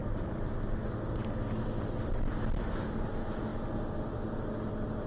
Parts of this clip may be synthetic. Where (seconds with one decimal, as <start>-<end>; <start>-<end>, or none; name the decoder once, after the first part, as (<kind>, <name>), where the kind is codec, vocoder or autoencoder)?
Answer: 0.0-3.1 (vocoder, BigVGAN v2)